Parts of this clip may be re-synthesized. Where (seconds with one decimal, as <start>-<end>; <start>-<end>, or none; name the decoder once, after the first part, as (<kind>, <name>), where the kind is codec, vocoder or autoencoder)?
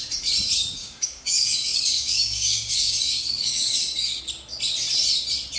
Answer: 0.8-4.2 (codec, DAC)